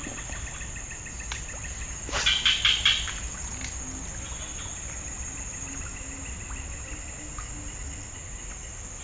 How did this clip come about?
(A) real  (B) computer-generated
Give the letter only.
A